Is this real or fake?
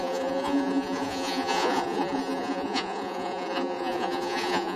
fake